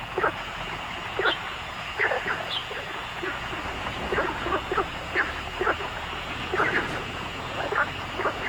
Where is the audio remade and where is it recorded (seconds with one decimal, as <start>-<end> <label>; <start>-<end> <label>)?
0.0-8.5 remade